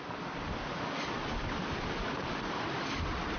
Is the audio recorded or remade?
recorded